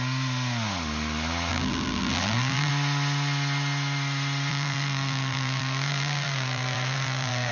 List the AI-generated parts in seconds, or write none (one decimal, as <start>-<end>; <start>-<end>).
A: 1.5-2.7; 4.5-7.5